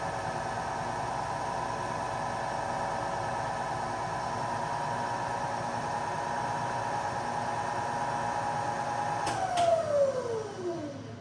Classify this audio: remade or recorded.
recorded